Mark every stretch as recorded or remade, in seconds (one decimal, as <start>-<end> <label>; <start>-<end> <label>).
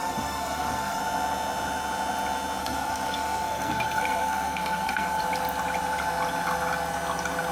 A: 0.0-1.0 remade; 1.0-2.6 recorded; 2.6-5.2 remade; 5.2-7.5 recorded